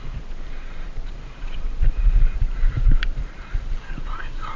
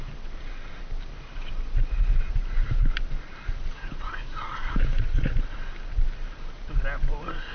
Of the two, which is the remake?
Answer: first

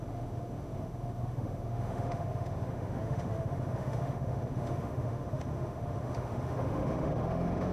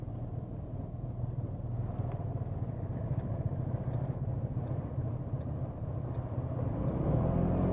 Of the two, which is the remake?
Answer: first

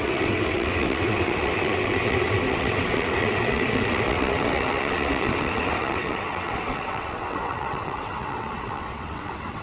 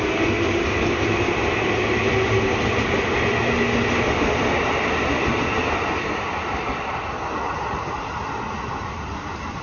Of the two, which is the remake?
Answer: first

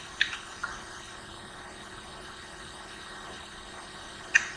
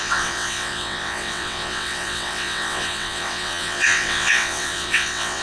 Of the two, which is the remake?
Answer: second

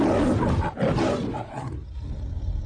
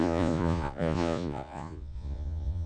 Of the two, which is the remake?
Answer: second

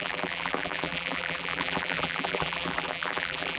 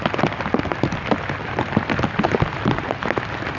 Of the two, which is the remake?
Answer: first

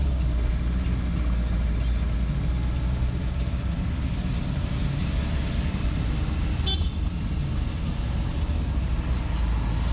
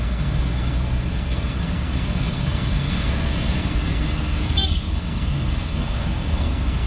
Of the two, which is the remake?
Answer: second